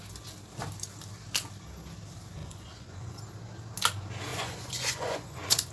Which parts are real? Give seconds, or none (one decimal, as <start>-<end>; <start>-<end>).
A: 0.0-2.4; 3.2-4.3